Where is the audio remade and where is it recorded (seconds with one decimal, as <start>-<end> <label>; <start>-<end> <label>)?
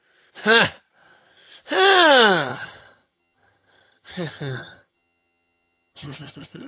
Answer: 0.0-2.5 recorded; 2.5-6.7 remade